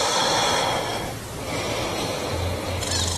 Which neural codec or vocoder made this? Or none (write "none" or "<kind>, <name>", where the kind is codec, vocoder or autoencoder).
vocoder, BigVGAN v2